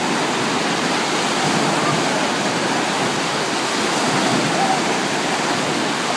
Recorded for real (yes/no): yes